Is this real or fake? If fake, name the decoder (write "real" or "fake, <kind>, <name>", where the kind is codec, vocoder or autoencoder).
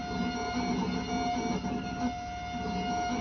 real